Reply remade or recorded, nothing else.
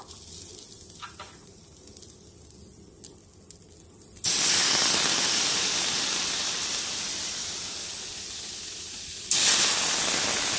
recorded